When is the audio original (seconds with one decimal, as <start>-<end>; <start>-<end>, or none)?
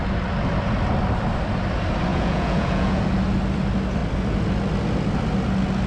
0.0-2.1; 3.0-5.9